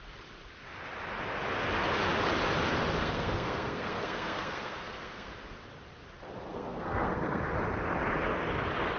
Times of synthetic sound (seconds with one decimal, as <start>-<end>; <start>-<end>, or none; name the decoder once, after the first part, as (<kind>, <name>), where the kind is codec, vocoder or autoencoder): 3.0-5.3 (codec, SNAC); 6.5-7.4